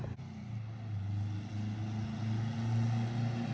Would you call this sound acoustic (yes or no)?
yes